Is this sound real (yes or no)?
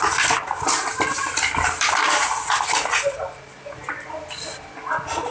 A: yes